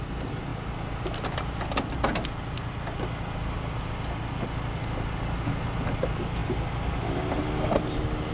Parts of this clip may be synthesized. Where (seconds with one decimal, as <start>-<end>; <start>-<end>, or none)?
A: none